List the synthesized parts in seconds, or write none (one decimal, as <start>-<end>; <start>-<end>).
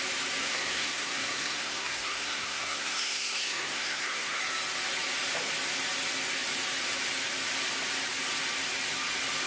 0.4-4.4